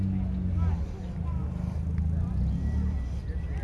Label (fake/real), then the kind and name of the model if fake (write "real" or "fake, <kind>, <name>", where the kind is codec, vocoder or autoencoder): real